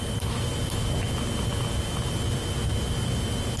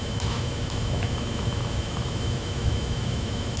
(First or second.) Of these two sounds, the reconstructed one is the second